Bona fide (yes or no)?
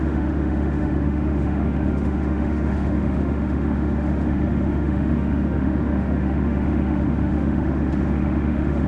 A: no